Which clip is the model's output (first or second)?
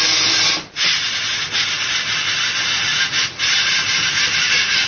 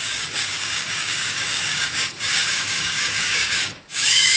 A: second